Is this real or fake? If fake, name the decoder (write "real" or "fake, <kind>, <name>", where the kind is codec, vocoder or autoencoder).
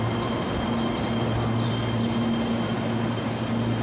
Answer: real